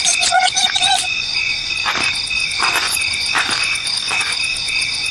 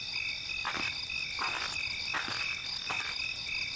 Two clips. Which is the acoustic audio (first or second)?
second